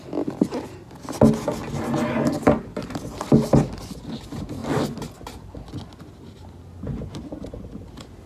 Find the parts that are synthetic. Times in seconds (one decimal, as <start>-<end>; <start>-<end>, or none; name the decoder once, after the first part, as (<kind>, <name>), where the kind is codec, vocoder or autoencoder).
none